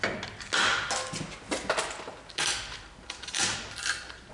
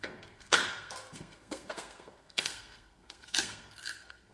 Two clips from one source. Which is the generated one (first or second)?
second